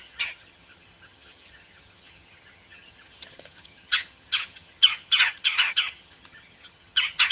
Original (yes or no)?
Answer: no